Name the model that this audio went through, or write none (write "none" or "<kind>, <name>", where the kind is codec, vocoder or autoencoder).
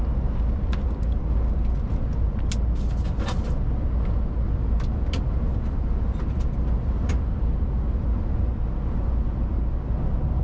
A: none